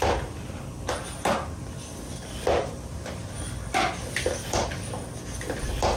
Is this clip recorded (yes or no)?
yes